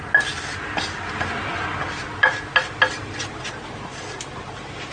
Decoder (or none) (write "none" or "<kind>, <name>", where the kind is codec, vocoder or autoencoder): none